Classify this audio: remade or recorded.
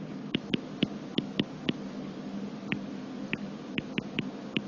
recorded